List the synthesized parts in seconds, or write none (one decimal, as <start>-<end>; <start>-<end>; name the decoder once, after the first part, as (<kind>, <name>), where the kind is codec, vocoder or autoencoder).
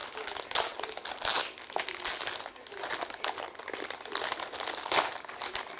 none